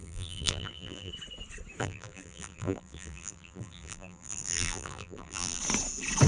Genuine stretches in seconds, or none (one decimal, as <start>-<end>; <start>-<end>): 1.1-1.8; 5.6-6.3